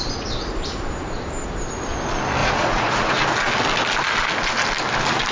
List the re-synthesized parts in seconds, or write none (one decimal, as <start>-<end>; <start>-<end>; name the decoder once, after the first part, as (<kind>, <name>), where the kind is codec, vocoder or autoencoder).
2.4-3.2 (vocoder, Vocos)